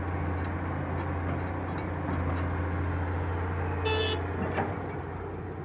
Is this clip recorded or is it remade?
recorded